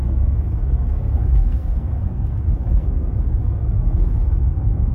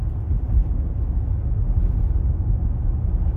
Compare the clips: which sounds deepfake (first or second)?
first